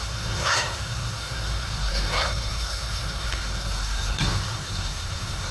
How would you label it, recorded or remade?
remade